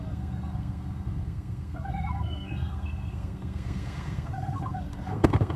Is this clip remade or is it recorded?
remade